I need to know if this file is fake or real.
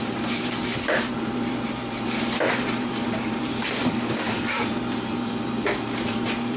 fake